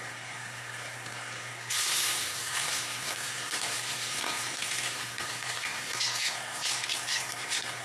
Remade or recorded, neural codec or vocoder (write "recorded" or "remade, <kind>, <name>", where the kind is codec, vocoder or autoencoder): remade, codec, SNAC